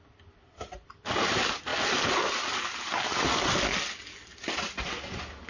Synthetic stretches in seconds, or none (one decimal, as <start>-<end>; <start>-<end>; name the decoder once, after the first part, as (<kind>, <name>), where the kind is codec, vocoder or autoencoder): none